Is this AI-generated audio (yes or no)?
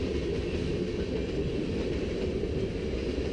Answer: no